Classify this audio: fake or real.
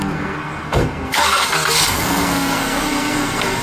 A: fake